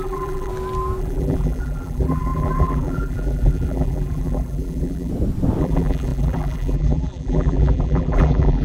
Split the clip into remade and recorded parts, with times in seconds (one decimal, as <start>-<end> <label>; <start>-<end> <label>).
0.0-0.5 remade; 0.5-1.0 recorded; 1.0-5.1 remade; 5.1-5.6 recorded; 5.6-8.6 remade